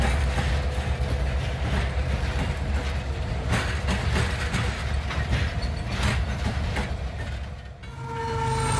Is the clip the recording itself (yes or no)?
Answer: yes